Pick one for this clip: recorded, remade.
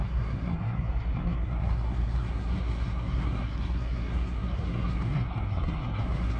remade